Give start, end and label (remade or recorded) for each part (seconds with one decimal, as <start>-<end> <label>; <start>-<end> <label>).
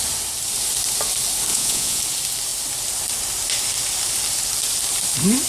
0.0-1.5 recorded; 1.5-2.0 remade; 2.0-5.5 recorded